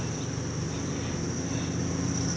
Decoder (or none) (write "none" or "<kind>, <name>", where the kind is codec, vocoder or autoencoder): none